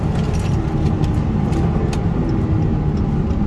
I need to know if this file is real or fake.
real